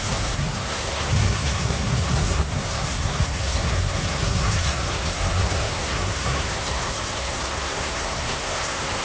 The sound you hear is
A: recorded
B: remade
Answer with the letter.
B